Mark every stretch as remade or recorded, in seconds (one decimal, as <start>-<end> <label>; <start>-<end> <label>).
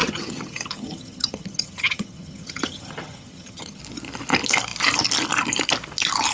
0.0-3.8 remade; 3.8-6.3 recorded